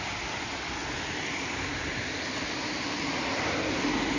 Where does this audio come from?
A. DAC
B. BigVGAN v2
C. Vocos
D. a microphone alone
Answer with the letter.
D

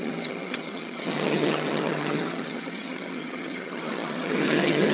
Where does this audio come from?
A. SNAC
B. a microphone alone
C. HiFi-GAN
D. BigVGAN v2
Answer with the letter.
C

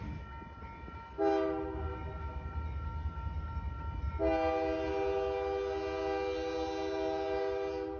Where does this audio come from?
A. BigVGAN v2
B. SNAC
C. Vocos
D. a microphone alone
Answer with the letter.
D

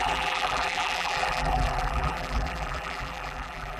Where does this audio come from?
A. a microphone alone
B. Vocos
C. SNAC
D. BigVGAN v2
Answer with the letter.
D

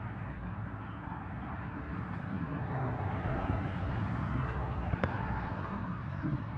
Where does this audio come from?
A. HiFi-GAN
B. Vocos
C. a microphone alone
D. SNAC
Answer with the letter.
D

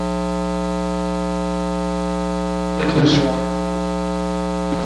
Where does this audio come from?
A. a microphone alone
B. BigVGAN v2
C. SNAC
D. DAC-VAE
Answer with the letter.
A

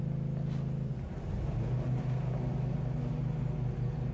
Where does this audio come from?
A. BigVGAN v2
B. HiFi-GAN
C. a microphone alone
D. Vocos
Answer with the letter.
C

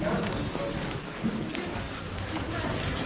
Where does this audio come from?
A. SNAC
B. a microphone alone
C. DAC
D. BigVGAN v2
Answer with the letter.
B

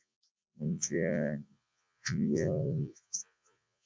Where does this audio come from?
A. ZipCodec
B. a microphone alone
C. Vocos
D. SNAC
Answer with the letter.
C